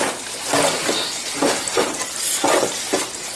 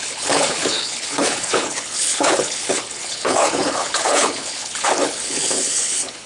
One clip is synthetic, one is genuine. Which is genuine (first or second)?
first